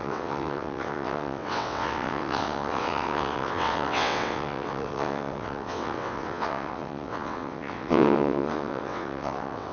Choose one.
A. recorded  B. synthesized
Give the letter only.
B